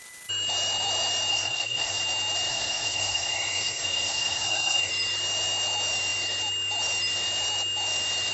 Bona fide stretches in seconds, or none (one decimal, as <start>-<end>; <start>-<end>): 0.0-1.3; 2.0-2.5; 4.9-8.3